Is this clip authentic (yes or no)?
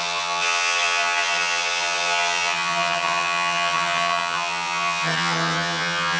no